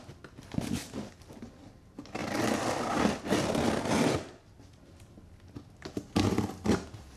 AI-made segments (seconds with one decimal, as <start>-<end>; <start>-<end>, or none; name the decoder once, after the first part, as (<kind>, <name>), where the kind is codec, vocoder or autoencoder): none